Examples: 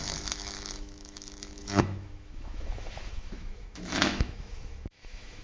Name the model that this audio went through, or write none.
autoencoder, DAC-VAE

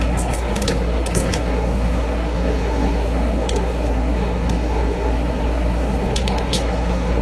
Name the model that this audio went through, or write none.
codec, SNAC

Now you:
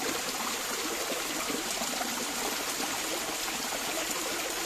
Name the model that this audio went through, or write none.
none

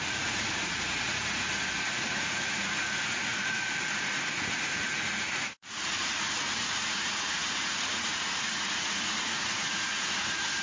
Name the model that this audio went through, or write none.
vocoder, Vocos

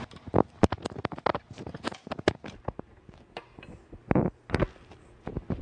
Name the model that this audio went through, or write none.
none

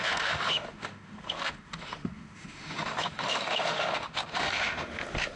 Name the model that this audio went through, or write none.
autoencoder, DAC-VAE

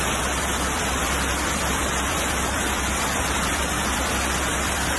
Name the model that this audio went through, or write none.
vocoder, BigVGAN v2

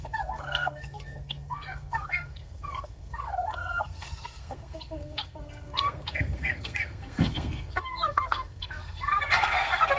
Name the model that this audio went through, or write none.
codec, SNAC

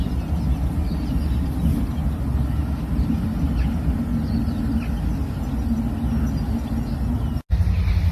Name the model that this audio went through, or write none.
none